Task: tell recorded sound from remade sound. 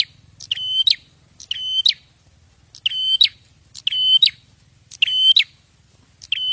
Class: recorded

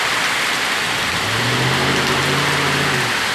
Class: recorded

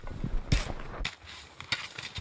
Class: recorded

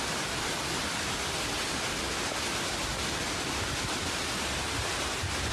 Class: recorded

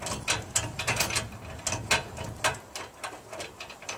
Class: recorded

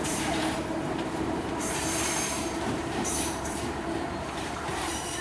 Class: remade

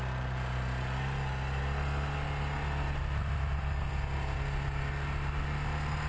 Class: recorded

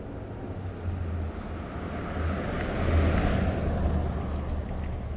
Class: recorded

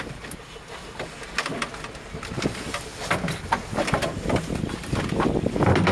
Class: recorded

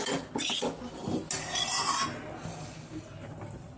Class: recorded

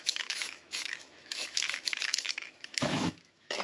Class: remade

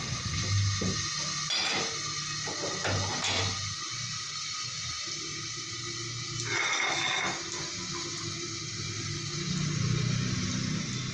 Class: recorded